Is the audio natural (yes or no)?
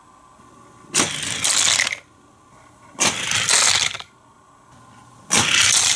yes